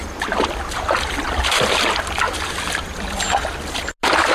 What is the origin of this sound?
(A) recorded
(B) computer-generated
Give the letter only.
A